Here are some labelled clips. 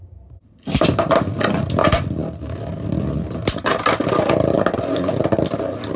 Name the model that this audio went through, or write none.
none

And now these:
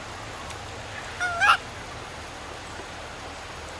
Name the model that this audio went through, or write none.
none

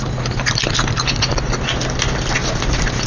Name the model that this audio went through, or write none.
none